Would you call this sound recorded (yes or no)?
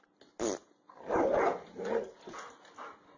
yes